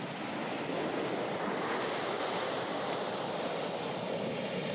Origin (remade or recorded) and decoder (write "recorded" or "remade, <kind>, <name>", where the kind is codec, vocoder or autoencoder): recorded